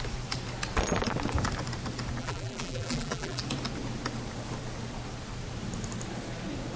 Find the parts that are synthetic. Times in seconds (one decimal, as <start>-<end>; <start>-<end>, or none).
2.2-3.4